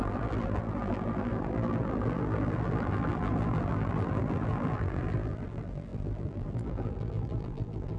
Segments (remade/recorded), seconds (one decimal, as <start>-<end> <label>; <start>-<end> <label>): 0.0-8.0 remade